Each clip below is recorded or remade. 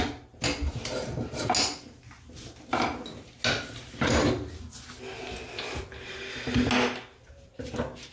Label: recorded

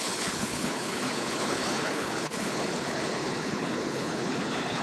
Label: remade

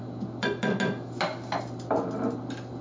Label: recorded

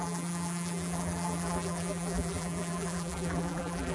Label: remade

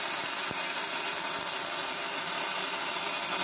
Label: recorded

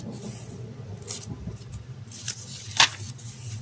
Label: recorded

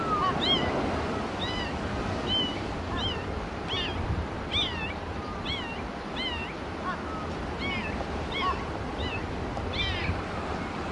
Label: recorded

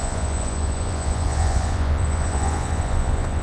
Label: remade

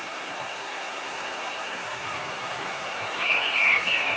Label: remade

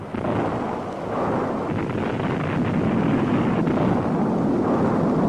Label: recorded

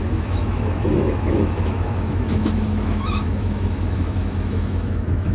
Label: remade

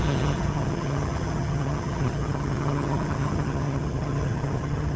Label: remade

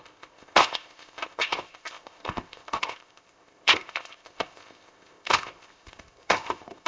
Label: remade